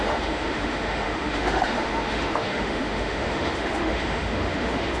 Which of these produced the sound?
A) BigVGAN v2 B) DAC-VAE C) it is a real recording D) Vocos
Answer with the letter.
B